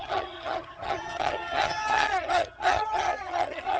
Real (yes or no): no